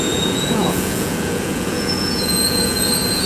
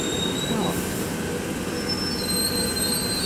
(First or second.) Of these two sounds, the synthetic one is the first